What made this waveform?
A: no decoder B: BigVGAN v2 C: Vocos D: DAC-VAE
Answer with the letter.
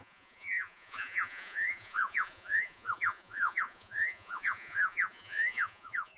C